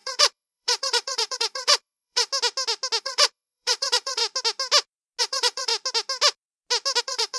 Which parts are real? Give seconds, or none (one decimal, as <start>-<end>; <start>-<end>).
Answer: 2.3-3.0; 4.2-5.2; 5.7-7.0